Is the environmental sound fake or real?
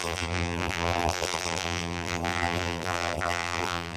fake